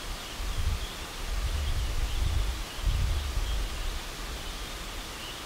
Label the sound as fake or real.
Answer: real